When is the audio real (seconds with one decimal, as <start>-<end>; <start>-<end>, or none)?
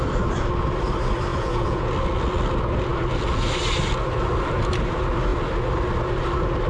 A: 0.0-1.3; 1.9-6.7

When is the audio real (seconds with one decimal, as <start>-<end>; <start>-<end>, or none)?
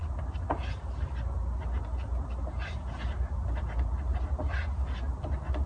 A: 0.0-5.7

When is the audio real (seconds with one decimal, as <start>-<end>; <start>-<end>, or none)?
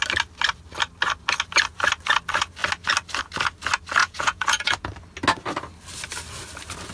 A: 0.0-4.0; 4.9-6.9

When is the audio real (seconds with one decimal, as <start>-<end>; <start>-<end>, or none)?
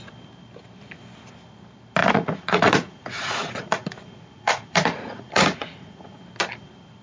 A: 0.0-2.0; 6.2-7.0